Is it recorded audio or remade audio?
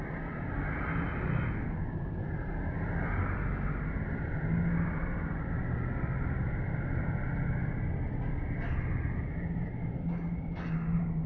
recorded